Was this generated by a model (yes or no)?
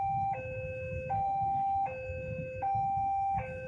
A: yes